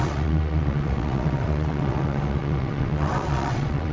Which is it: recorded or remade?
remade